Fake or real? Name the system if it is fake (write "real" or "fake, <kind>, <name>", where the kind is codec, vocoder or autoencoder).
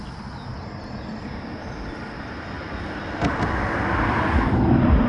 real